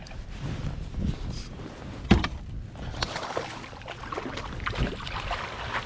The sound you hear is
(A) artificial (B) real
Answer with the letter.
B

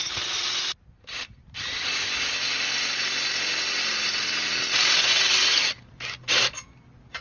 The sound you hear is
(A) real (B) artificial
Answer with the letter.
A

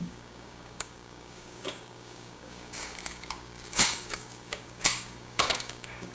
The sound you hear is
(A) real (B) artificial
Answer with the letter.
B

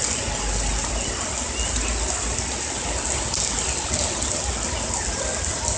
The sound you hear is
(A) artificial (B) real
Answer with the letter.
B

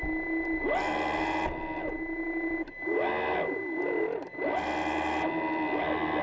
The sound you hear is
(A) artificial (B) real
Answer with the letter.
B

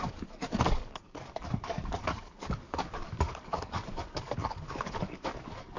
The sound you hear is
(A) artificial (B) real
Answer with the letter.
A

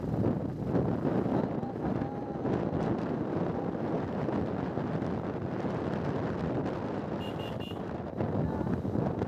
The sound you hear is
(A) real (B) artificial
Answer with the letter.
A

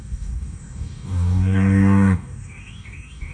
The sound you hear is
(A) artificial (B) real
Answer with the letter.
A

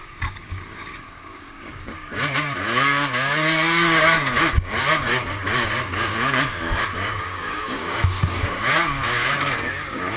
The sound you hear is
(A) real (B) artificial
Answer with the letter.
B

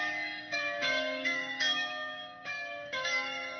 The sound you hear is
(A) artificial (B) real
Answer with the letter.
A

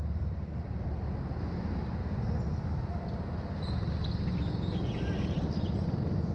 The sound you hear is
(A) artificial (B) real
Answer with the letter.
B